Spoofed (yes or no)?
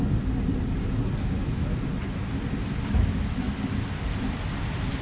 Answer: no